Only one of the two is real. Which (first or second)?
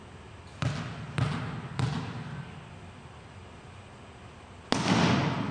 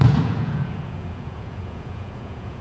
first